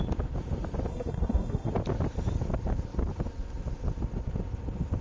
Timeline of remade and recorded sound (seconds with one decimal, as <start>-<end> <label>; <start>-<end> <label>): 0.0-0.9 recorded; 0.9-1.7 remade; 1.7-5.0 recorded